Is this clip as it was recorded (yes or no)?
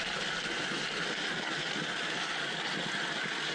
yes